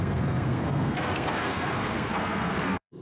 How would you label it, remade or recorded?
remade